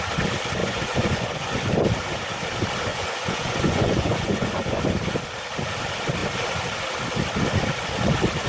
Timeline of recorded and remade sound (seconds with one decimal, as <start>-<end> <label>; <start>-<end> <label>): 0.0-0.6 recorded; 0.6-1.7 remade; 1.7-2.9 recorded; 2.9-4.8 remade; 4.8-8.5 recorded